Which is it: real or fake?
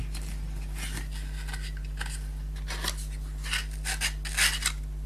real